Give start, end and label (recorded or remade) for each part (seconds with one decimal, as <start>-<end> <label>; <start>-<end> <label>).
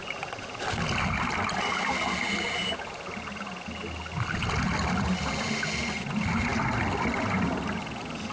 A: 0.0-8.3 recorded